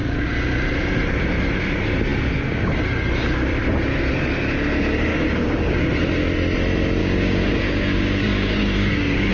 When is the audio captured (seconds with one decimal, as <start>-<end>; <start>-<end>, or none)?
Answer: 0.0-5.1; 5.9-7.0